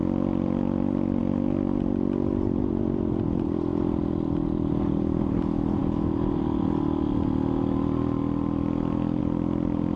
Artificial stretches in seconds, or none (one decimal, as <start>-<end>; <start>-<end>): none

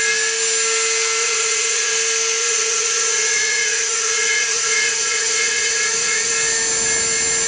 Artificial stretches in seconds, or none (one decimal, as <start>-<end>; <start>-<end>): 1.2-1.9; 2.4-6.3

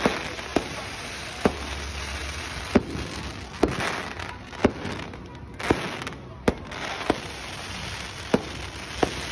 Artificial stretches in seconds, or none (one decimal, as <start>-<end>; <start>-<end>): 0.5-1.5

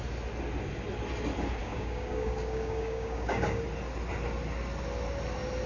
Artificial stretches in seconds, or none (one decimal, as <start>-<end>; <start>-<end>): 1.6-3.6